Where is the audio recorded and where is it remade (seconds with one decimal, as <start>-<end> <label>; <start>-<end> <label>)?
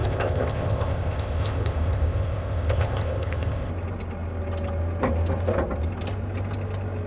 0.0-3.7 remade; 3.7-7.1 recorded